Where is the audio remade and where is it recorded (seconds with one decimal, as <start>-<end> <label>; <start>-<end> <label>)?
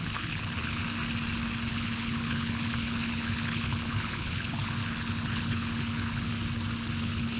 0.0-0.8 remade; 0.8-1.7 recorded; 1.7-6.3 remade; 6.3-7.0 recorded; 7.0-7.4 remade